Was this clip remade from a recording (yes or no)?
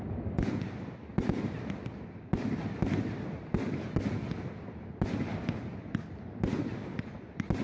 no